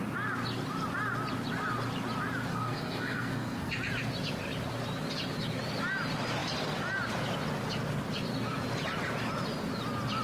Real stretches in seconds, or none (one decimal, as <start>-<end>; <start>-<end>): 0.0-2.5; 3.7-10.2